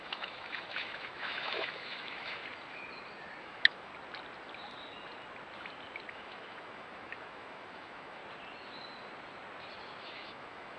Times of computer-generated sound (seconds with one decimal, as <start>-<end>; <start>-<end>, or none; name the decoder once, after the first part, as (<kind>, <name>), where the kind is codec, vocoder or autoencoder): 0.0-2.4 (autoencoder, DAC-VAE); 3.4-3.9; 6.1-8.2; 10.0-10.8